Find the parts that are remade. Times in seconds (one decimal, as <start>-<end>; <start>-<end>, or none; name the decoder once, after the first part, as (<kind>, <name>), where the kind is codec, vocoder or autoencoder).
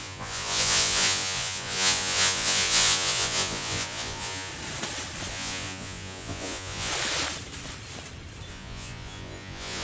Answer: 0.0-4.5 (vocoder, Vocos); 5.3-6.9; 8.5-9.8